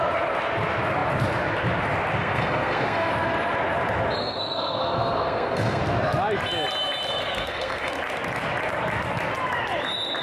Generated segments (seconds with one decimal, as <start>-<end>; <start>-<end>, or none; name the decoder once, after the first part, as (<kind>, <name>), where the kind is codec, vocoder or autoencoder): 2.2-3.1 (codec, SNAC); 4.2-5.8; 7.2-7.9